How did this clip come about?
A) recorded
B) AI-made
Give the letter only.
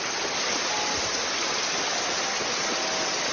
A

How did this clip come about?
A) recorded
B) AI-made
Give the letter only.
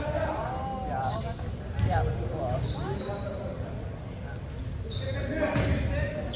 A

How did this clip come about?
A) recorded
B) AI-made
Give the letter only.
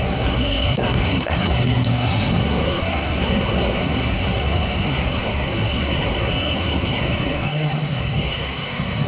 B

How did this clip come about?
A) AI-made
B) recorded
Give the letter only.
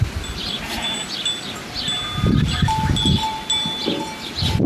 B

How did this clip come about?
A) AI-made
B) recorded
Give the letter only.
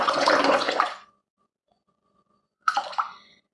A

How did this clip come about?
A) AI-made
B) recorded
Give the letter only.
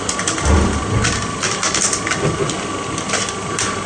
B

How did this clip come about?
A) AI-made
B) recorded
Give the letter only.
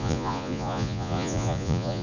A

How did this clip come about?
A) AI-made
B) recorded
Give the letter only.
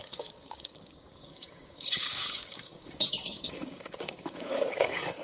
A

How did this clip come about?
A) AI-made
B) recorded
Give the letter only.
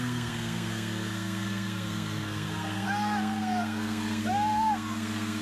A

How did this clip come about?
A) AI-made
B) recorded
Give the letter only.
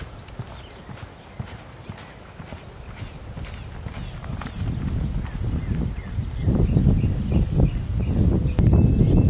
B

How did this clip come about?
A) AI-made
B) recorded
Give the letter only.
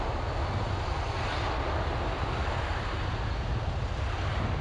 B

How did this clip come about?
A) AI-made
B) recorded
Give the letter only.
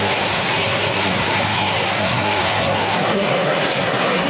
A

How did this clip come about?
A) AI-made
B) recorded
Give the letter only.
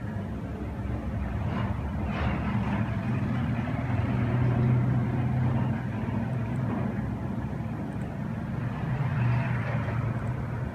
B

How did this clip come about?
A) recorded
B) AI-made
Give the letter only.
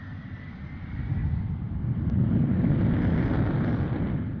A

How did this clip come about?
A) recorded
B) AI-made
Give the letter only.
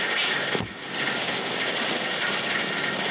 A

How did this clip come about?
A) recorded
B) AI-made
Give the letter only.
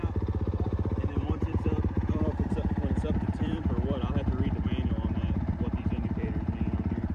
B